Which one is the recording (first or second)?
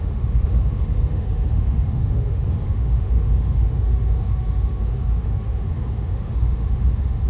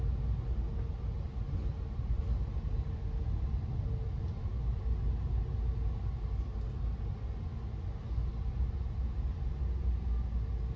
second